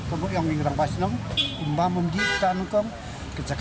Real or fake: real